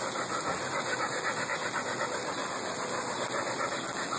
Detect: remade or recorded recorded